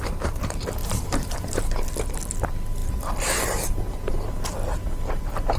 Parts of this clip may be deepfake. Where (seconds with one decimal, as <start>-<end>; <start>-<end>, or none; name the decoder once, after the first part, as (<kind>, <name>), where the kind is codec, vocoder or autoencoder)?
0.8-1.6 (vocoder, BigVGAN v2)